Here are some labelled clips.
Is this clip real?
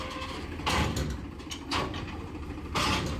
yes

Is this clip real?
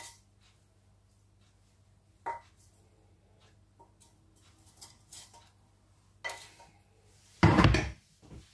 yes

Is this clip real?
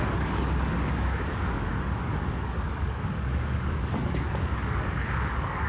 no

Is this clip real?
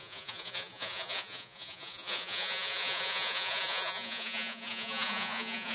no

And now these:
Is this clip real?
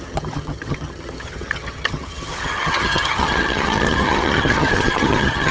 no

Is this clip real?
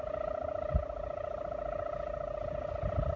yes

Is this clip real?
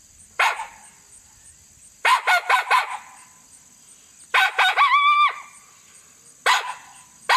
yes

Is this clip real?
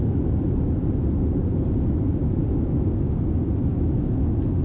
yes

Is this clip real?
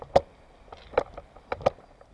yes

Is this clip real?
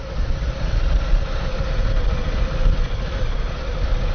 yes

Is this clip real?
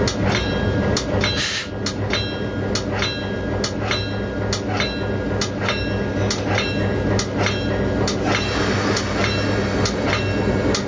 yes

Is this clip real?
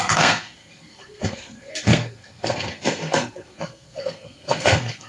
no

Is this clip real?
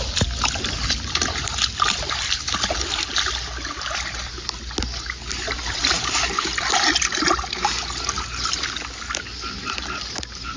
yes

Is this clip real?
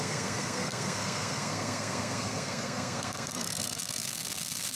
no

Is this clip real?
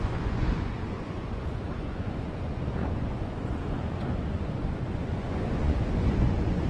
no